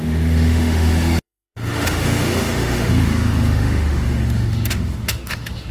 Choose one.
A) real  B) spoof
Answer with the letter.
B